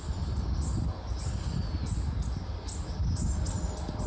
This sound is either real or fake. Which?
real